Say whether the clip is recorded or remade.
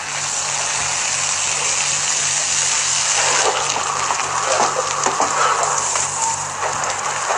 recorded